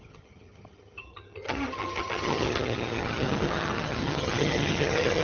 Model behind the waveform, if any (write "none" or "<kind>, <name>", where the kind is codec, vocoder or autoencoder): vocoder, HiFi-GAN